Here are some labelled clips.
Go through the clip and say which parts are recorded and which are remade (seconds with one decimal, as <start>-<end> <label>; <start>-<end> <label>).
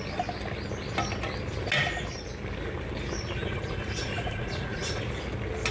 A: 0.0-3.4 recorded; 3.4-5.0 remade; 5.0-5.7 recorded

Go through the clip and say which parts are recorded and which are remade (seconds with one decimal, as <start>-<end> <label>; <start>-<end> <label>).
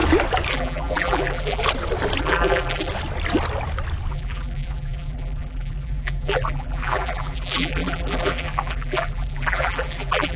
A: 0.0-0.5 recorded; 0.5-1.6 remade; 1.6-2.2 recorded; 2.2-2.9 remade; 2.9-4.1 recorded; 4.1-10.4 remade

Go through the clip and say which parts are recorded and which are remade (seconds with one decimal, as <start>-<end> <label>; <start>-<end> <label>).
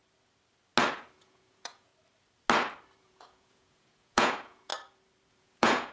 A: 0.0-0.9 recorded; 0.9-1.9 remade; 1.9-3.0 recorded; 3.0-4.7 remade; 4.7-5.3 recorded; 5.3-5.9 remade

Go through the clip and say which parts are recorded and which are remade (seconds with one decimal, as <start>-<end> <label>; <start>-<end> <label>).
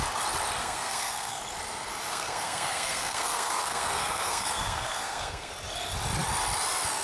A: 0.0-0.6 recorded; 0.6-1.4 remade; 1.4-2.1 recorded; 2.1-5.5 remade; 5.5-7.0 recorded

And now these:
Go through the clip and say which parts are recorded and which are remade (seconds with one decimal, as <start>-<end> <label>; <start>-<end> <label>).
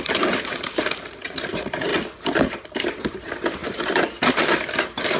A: 0.0-1.9 remade; 1.9-2.5 recorded; 2.5-5.2 remade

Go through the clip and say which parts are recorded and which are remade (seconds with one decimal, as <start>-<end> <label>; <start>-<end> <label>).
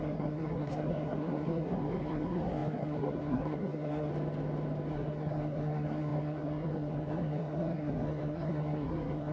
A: 0.0-4.1 remade; 4.1-4.9 recorded; 4.9-9.3 remade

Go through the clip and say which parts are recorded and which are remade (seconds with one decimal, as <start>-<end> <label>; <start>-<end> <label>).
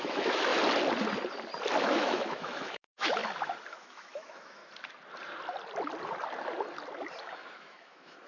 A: 0.0-0.5 remade; 0.5-1.8 recorded; 1.8-3.2 remade; 3.2-3.7 recorded; 3.7-4.6 remade; 4.6-7.2 recorded; 7.2-8.3 remade